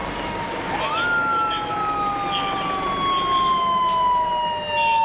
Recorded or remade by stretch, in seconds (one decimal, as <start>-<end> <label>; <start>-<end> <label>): 0.0-5.0 recorded